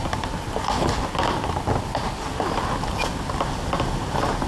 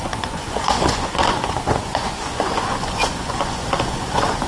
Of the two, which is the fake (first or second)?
second